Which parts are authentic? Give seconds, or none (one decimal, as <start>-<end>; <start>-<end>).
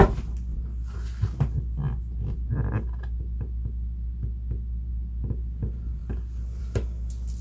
0.0-7.4